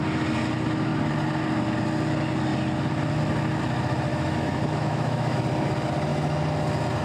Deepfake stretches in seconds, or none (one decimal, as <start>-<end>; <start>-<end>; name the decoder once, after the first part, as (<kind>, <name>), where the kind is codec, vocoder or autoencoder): 4.1-5.4 (autoencoder, DAC-VAE)